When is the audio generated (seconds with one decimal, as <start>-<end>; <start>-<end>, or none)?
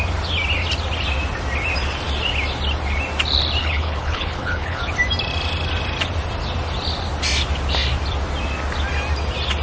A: 3.6-4.8